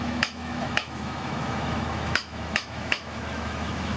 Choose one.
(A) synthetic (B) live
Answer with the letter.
A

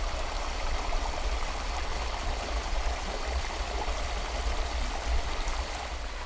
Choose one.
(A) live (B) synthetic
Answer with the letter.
A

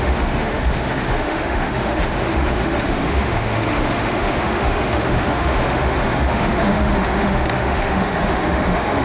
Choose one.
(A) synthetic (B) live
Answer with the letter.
A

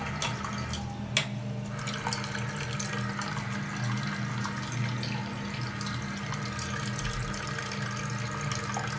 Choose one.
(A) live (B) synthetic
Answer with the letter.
A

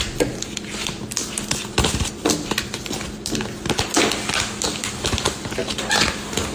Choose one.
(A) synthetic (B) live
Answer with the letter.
B